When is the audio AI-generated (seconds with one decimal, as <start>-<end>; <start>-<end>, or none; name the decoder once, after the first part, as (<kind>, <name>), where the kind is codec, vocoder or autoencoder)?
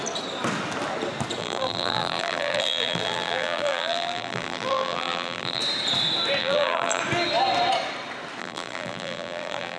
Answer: 1.4-5.6 (vocoder, BigVGAN v2); 6.4-7.0; 8.4-9.8